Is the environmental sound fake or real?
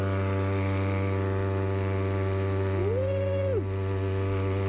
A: real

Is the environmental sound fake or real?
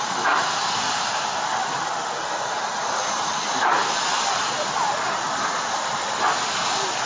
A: real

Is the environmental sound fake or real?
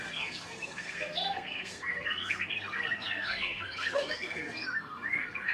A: fake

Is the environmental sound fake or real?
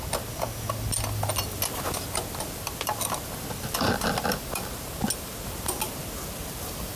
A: real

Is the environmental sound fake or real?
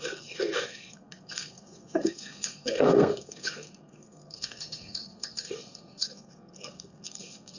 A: fake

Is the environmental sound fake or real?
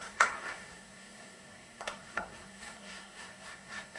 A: fake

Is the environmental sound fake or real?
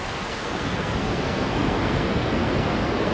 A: fake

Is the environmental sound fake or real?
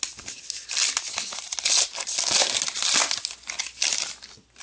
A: real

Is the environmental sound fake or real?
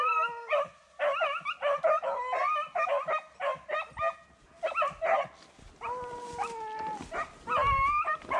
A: real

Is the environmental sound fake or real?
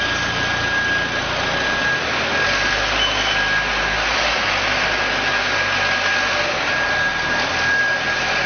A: real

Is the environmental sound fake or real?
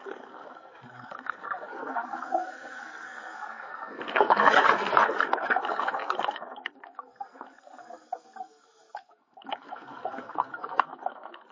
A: fake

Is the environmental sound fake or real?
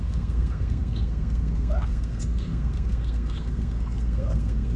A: fake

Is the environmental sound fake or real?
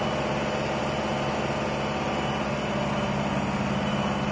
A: real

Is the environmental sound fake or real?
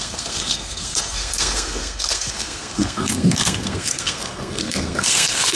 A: fake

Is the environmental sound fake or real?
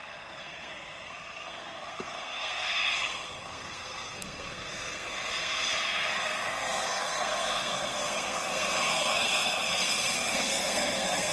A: fake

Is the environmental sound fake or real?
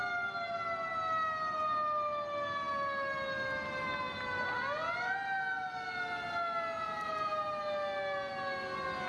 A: real